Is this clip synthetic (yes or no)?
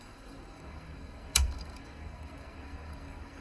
yes